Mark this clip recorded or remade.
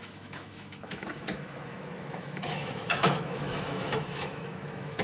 remade